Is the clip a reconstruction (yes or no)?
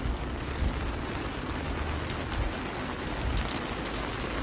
no